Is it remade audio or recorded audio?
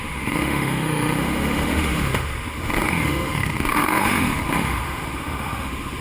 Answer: remade